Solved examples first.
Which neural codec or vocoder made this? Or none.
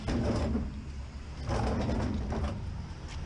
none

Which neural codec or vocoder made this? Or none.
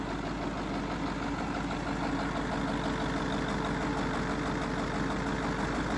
none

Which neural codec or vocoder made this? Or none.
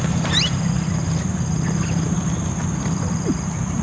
none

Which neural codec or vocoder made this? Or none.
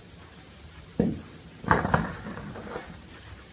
vocoder, BigVGAN v2